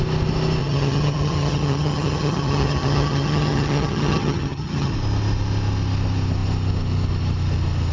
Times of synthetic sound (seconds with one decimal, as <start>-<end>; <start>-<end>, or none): 0.6-4.9